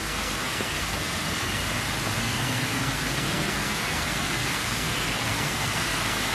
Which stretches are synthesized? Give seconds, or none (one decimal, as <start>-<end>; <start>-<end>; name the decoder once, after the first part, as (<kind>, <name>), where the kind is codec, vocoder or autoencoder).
0.0-1.6 (codec, SNAC); 2.2-6.3